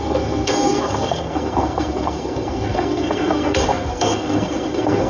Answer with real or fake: fake